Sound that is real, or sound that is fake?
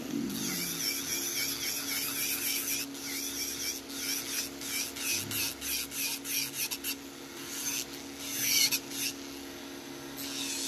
real